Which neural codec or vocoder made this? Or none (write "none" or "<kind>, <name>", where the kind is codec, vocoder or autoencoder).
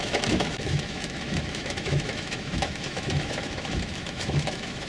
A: autoencoder, DAC-VAE